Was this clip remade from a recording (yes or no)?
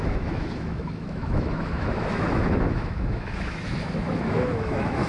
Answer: yes